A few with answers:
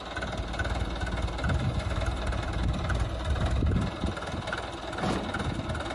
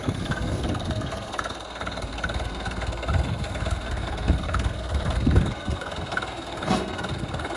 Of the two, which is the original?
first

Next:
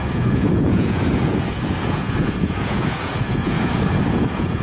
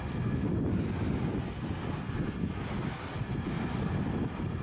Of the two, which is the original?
second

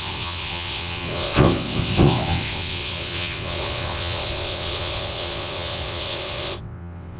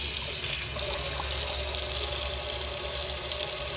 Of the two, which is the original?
second